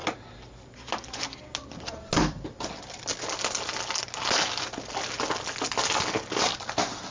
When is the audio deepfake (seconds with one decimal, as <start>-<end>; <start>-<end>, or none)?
none